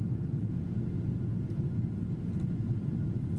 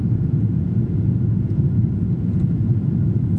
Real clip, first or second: first